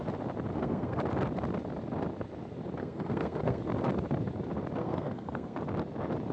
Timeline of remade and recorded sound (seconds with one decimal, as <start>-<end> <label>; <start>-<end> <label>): 0.0-0.5 recorded; 0.5-1.0 remade; 1.0-2.8 recorded; 2.8-3.6 remade; 3.6-4.8 recorded; 4.8-5.6 remade; 5.6-6.3 recorded

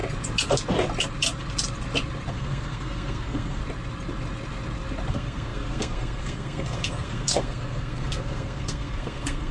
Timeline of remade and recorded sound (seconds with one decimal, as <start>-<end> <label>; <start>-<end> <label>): 0.0-2.3 recorded; 2.3-3.6 remade; 3.6-5.1 recorded; 5.1-9.5 remade